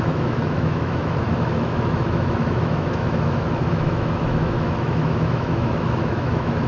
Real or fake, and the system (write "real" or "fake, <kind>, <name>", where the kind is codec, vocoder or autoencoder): fake, autoencoder, DAC-VAE